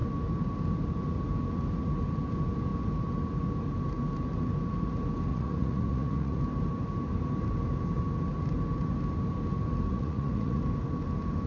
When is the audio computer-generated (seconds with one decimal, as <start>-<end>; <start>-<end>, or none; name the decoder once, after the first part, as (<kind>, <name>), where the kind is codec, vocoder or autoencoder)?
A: 5.3-6.4 (vocoder, Vocos); 9.9-10.6